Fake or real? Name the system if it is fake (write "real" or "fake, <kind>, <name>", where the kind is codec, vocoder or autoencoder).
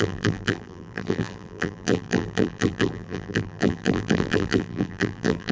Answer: fake, vocoder, BigVGAN v2